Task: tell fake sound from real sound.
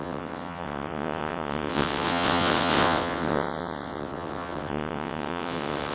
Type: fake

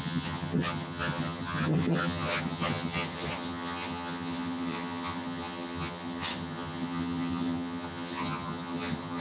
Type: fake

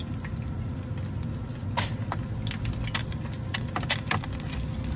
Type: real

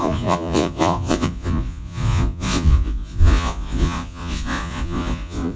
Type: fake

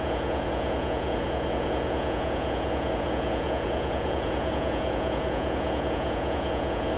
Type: fake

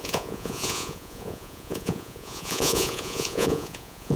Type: fake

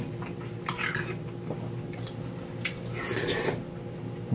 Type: real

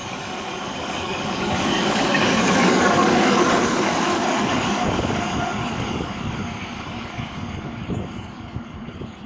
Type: fake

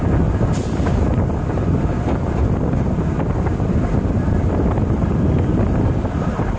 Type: real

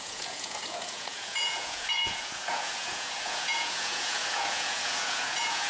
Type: fake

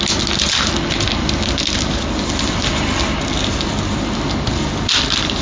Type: real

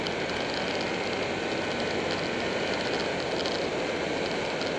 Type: real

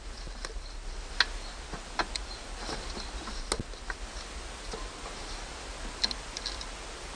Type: real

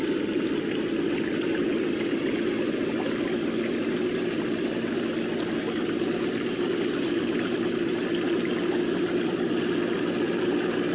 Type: real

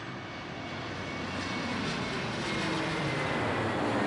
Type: real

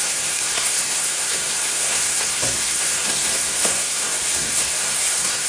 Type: fake